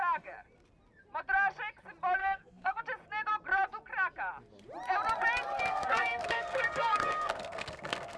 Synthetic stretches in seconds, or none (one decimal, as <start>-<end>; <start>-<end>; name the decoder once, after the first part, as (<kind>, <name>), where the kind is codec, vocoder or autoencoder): 2.2-2.8 (codec, SNAC); 5.7-8.2

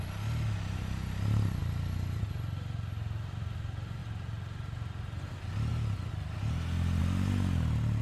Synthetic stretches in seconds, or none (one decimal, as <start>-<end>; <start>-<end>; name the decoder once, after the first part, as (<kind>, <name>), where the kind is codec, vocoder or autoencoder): none

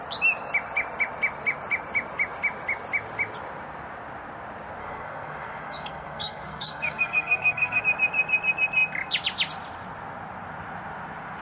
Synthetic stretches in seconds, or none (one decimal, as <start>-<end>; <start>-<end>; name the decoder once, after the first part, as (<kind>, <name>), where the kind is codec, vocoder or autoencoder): 4.8-7.8 (codec, SNAC)

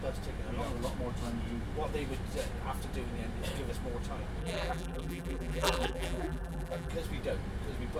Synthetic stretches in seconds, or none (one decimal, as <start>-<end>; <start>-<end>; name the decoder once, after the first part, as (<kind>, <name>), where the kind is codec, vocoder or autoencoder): 4.4-6.9 (vocoder, BigVGAN v2)